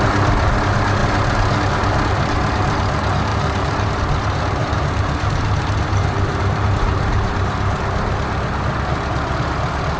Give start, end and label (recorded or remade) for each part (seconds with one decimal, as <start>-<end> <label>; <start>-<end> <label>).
0.0-3.3 recorded; 3.3-3.9 remade; 3.9-4.6 recorded; 4.6-7.8 remade; 7.8-10.0 recorded